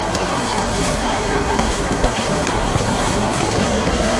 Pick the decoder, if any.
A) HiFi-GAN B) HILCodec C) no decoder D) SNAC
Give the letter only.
D